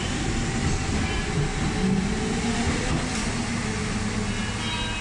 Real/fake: real